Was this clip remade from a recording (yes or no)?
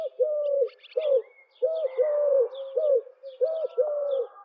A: no